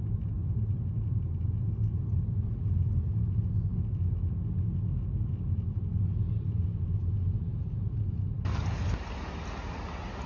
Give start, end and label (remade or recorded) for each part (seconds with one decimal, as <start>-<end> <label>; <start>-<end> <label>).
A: 0.0-10.3 recorded